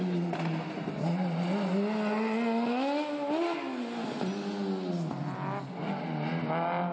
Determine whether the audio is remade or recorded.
recorded